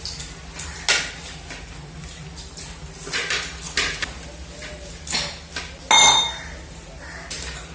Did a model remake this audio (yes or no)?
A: no